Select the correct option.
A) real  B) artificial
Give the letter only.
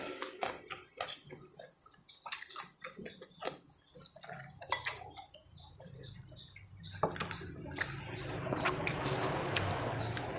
A